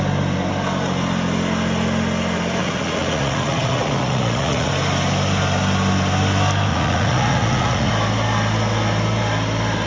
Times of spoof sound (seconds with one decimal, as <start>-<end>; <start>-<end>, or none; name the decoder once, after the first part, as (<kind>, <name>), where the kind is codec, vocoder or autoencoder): 2.6-4.7 (vocoder, Vocos); 6.7-7.9